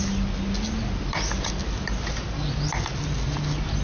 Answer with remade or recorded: recorded